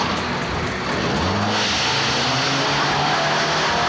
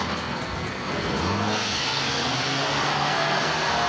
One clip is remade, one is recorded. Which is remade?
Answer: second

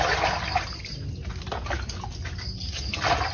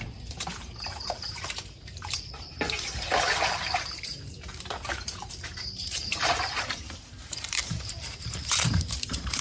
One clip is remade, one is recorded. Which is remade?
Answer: second